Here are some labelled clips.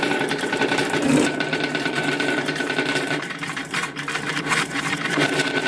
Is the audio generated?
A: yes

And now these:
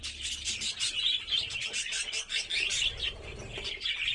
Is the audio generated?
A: no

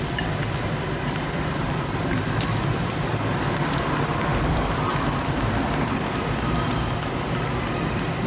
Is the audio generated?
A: yes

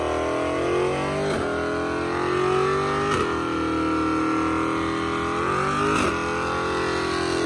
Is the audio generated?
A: no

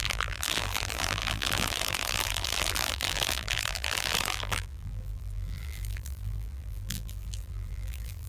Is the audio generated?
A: yes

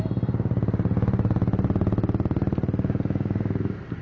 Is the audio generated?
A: no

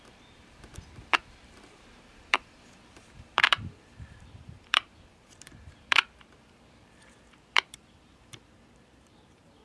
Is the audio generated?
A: yes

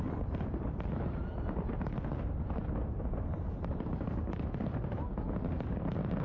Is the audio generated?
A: yes